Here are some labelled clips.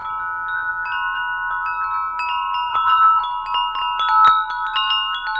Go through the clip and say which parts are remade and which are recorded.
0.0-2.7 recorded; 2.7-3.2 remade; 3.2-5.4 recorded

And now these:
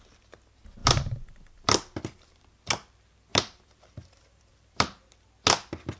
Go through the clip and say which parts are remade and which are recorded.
0.0-0.8 recorded; 0.8-2.4 remade; 2.4-3.3 recorded; 3.3-5.1 remade; 5.1-6.0 recorded

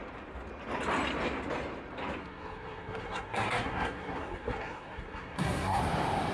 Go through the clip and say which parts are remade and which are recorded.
0.0-2.2 recorded; 2.2-5.8 remade; 5.8-6.3 recorded

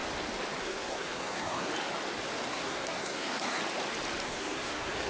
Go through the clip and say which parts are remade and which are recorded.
0.0-0.6 recorded; 0.6-1.7 remade; 1.7-2.5 recorded; 2.5-3.6 remade; 3.6-4.2 recorded; 4.2-5.1 remade

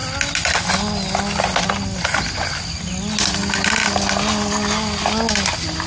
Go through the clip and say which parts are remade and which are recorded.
0.0-5.9 recorded

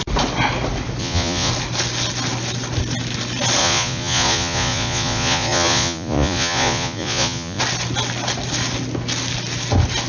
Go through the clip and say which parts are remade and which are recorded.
0.0-1.0 recorded; 1.0-1.5 remade; 1.5-3.6 recorded; 3.6-7.6 remade; 7.6-10.1 recorded

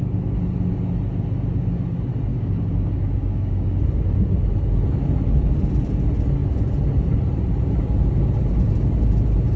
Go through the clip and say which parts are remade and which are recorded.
0.0-2.3 recorded; 2.3-3.8 remade; 3.8-9.6 recorded